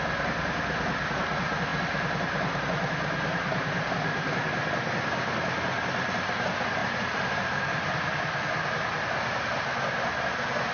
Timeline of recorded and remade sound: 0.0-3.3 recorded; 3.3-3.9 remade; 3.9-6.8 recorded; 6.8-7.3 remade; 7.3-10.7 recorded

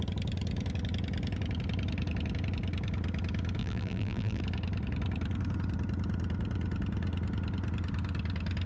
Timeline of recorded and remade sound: 0.0-3.6 recorded; 3.6-4.4 remade; 4.4-8.7 recorded

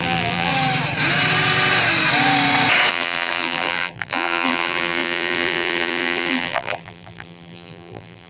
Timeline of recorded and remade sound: 0.0-0.5 remade; 0.5-2.9 recorded; 2.9-8.3 remade

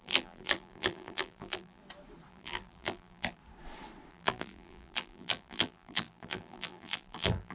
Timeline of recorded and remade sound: 0.0-1.8 remade; 1.8-2.3 recorded; 2.3-3.4 remade; 3.4-4.1 recorded; 4.1-7.5 remade

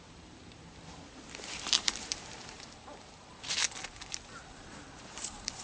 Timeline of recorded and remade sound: 0.0-0.6 remade; 0.6-1.4 recorded; 1.4-3.6 remade; 3.6-4.5 recorded; 4.5-5.6 remade